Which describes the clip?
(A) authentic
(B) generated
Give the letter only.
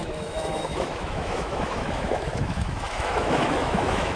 B